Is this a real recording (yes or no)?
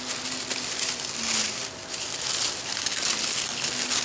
yes